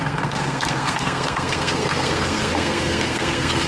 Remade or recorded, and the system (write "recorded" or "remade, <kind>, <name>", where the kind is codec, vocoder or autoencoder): remade, codec, SNAC